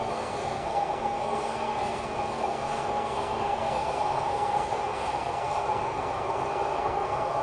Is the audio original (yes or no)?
no